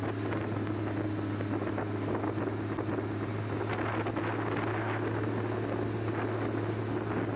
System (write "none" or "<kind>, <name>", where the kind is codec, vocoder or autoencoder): none